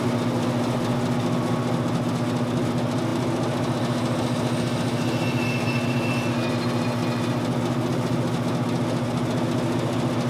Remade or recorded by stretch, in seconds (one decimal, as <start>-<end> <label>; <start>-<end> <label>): 0.0-10.3 recorded